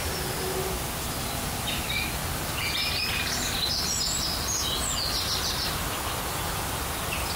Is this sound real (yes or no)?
yes